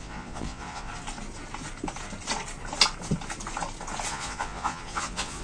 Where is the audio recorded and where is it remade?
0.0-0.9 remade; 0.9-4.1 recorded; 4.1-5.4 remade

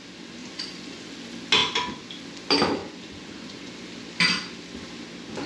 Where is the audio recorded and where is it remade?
0.0-0.4 recorded; 0.4-1.1 remade; 1.1-2.8 recorded; 2.8-3.7 remade; 3.7-5.5 recorded

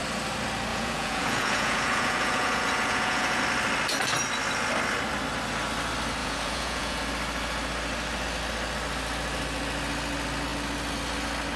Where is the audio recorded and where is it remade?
0.0-0.7 recorded; 0.7-3.4 remade; 3.4-6.2 recorded; 6.2-7.0 remade; 7.0-11.6 recorded

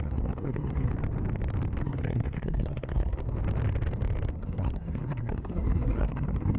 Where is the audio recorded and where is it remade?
0.0-0.9 remade; 0.9-1.8 recorded; 1.8-3.2 remade; 3.2-4.3 recorded; 4.3-6.6 remade

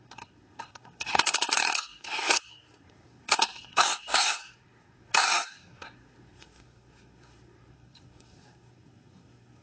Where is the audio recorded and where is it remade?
0.0-9.6 remade

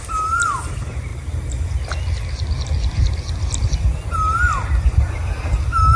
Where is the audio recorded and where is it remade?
0.0-6.0 recorded

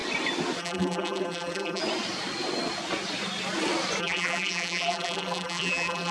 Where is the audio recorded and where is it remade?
0.0-0.6 recorded; 0.6-1.8 remade; 1.8-4.0 recorded; 4.0-6.1 remade